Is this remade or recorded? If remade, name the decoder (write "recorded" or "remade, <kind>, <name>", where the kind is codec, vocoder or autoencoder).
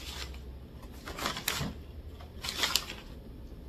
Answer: recorded